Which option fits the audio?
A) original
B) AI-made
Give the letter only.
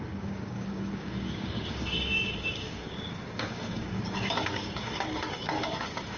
B